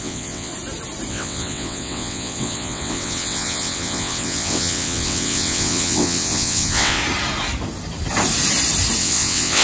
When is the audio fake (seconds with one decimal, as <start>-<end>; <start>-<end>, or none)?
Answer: 0.0-0.5; 1.1-7.0; 9.0-9.6